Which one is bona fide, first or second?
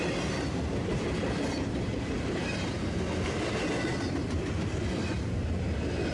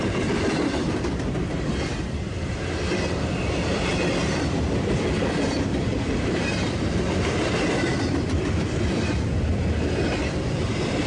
first